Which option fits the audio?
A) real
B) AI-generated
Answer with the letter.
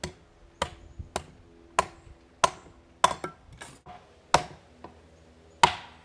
A